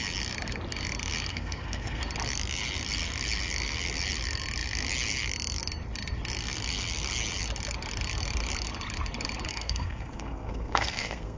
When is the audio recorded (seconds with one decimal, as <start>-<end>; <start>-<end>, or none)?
0.0-1.3; 2.0-9.5